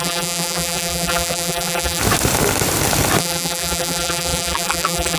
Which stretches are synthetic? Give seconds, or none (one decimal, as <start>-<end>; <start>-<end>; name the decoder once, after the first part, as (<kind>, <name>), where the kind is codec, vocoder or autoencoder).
0.0-2.0 (vocoder, BigVGAN v2); 3.2-5.2